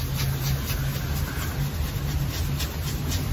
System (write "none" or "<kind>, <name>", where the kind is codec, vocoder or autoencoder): none